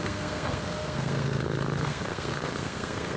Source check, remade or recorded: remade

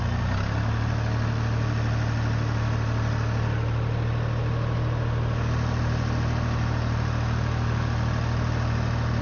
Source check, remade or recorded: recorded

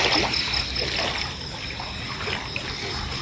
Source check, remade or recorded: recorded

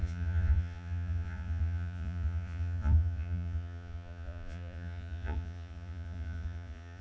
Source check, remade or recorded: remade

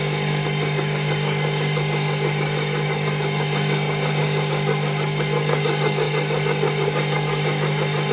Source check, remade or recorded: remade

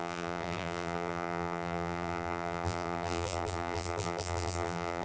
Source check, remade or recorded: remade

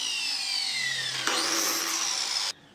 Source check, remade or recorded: recorded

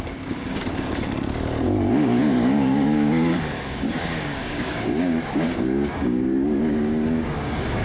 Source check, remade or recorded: remade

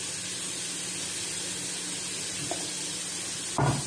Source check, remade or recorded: recorded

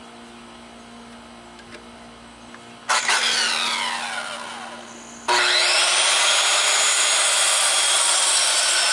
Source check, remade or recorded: recorded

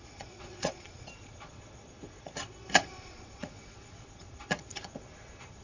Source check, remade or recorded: remade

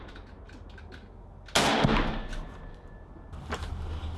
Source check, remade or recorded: recorded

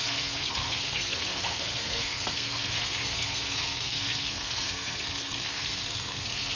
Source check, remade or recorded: remade